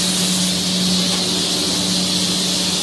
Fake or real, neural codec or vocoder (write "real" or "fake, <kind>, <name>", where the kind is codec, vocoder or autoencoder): real